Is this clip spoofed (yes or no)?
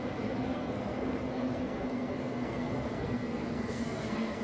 yes